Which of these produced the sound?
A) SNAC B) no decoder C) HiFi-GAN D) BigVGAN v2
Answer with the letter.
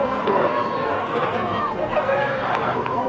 A